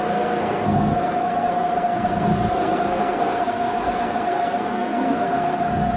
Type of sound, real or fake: fake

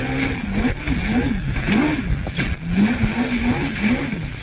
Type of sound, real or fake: real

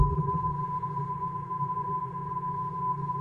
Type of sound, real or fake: fake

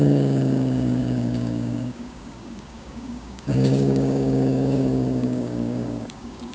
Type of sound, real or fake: fake